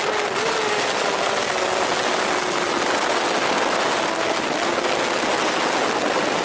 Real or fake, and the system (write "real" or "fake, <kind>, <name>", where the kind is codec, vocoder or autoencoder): real